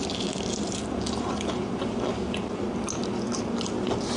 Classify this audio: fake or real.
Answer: real